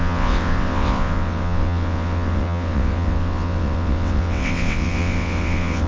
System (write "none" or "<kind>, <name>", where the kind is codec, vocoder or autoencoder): vocoder, WaveNeXt